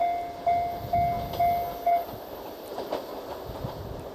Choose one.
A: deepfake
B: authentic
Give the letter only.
B